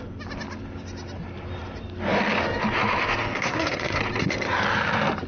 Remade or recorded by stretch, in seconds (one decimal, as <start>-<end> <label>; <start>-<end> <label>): 0.0-3.4 recorded; 3.4-4.0 remade; 4.0-5.3 recorded